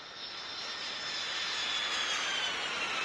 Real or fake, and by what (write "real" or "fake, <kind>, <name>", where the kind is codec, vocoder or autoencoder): real